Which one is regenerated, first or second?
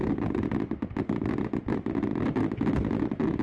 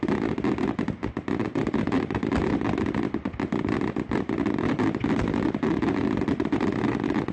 second